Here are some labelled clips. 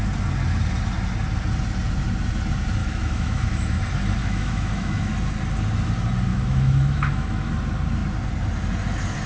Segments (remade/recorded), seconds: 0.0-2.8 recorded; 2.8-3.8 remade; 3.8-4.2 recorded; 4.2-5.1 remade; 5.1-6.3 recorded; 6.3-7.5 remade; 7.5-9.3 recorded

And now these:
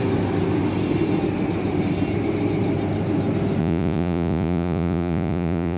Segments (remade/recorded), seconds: 0.0-3.6 recorded; 3.6-5.8 remade